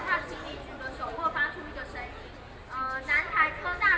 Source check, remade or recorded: recorded